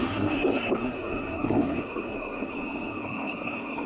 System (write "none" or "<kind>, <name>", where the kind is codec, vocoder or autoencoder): codec, SNAC